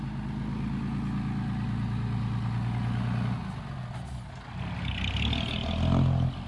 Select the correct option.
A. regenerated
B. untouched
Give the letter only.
B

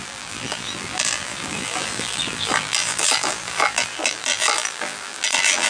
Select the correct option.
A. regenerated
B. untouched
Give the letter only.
A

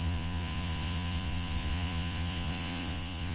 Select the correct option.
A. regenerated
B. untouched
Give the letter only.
A